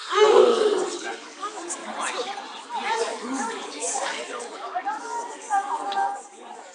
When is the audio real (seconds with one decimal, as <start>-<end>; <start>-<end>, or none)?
1.8-3.0

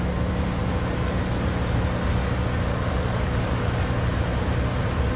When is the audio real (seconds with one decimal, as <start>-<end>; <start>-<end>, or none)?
0.0-0.6; 1.3-2.7; 3.9-5.2